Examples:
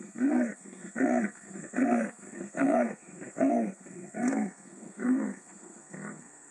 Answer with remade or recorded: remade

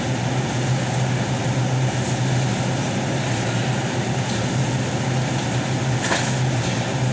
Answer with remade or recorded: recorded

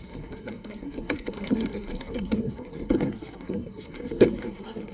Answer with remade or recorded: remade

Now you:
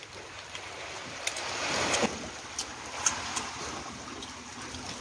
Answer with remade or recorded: recorded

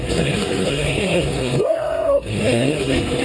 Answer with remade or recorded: remade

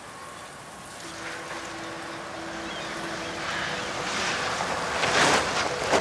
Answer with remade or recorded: recorded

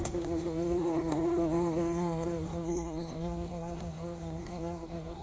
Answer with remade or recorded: remade